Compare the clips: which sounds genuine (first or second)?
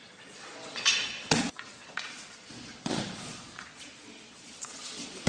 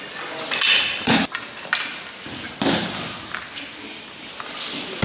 second